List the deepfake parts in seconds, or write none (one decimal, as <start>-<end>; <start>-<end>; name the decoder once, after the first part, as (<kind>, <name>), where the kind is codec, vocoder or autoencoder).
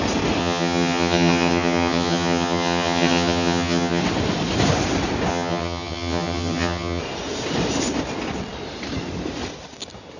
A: 0.4-4.0 (vocoder, HiFi-GAN); 5.3-7.0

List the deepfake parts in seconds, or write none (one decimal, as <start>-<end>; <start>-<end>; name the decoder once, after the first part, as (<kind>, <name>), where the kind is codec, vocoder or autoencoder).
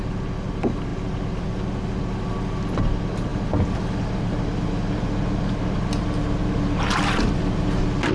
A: none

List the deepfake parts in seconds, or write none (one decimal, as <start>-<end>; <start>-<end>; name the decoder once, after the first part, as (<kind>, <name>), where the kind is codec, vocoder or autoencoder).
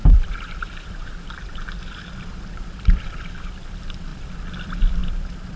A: 0.0-4.1 (vocoder, BigVGAN v2); 4.6-5.0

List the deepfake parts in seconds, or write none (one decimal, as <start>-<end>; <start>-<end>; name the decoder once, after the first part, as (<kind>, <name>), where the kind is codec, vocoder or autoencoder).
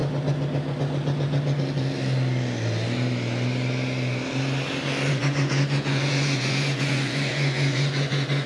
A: 5.1-8.5 (vocoder, Vocos)